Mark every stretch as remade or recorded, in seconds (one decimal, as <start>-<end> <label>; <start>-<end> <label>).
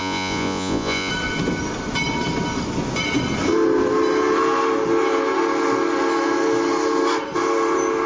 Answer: 0.0-1.1 remade; 1.1-8.1 recorded